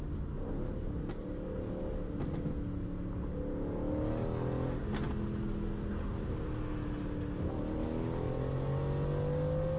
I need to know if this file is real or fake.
real